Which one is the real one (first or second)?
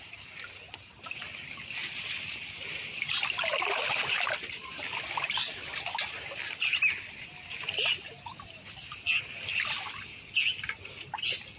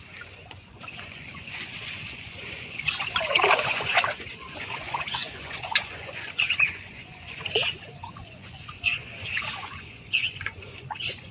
first